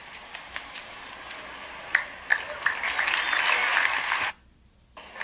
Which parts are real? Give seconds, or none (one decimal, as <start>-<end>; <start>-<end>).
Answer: 0.9-5.2